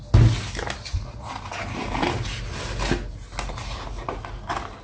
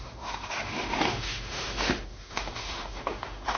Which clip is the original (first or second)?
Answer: first